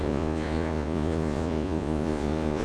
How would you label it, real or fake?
fake